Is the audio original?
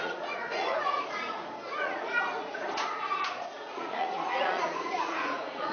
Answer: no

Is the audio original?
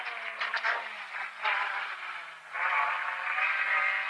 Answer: yes